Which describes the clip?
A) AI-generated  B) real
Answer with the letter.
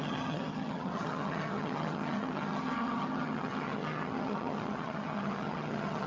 A